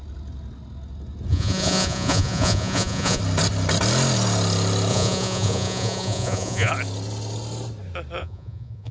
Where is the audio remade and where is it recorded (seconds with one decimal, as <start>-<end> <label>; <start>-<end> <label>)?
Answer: 0.0-1.3 recorded; 1.3-3.2 remade; 3.2-4.9 recorded; 4.9-6.7 remade; 6.7-8.2 recorded; 8.2-8.9 remade